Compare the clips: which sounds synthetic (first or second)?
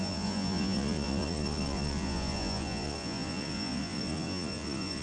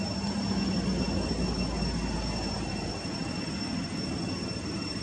first